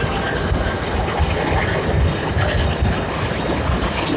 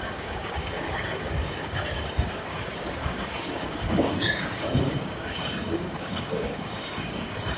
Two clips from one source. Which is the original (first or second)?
first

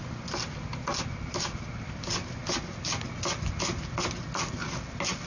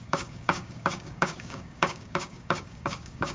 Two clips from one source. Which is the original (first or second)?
first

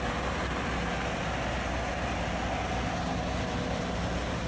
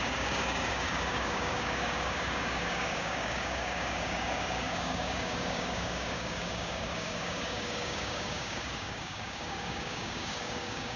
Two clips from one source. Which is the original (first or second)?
first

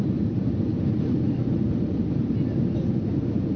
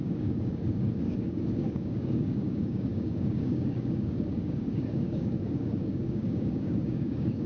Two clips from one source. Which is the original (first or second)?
first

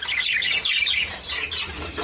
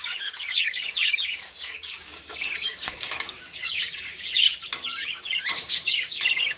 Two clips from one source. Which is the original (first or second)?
first